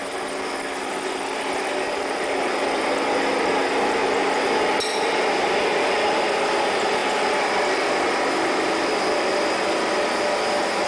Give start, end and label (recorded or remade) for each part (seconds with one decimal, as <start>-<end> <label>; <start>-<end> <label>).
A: 0.0-10.9 recorded